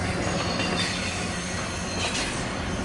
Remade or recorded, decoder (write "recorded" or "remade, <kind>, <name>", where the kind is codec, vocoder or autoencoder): recorded